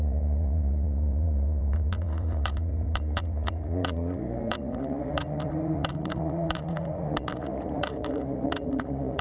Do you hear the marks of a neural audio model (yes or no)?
yes